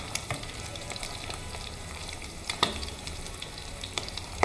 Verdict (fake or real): fake